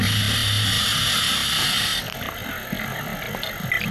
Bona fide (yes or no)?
yes